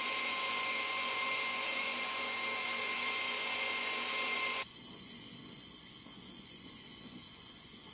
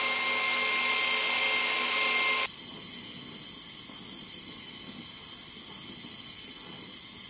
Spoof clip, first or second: first